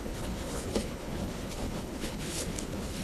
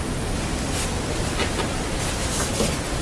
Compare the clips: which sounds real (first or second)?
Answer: second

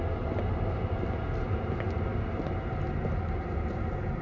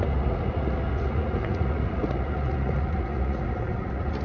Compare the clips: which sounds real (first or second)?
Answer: first